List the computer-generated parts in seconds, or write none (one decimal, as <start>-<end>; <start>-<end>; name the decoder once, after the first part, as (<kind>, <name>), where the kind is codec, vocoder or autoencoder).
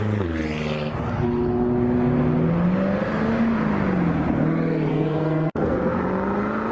4.9-6.0 (codec, SNAC)